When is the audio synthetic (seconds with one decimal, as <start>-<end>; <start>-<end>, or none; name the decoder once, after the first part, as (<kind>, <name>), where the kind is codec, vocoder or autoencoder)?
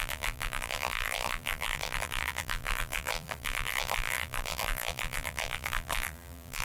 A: 0.0-6.6 (vocoder, BigVGAN v2)